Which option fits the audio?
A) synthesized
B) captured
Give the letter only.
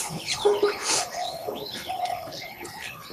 A